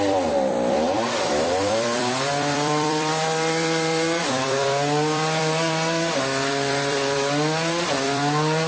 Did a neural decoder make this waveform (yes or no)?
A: yes